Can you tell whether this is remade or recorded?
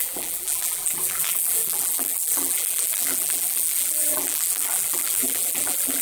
remade